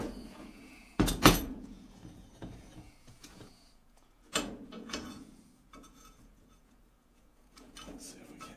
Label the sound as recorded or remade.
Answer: remade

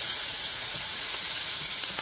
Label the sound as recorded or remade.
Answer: remade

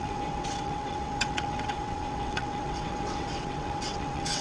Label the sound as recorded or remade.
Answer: remade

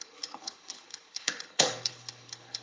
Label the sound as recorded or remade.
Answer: remade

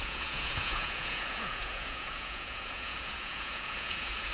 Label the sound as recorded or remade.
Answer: remade